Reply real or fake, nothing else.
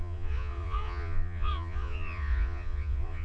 fake